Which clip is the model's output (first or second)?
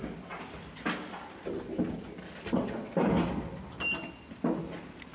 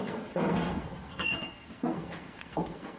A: second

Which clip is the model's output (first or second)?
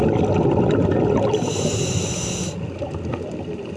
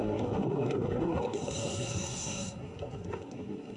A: second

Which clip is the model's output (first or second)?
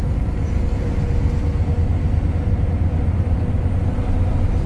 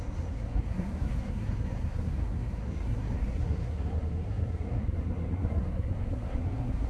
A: second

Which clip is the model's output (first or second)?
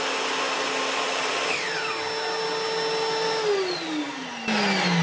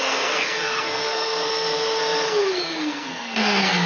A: second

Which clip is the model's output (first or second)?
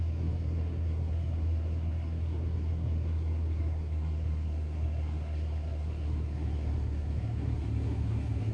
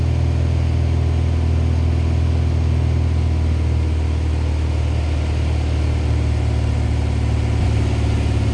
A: first